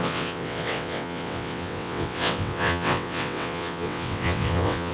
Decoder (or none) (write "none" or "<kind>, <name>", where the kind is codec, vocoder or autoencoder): vocoder, WaveNeXt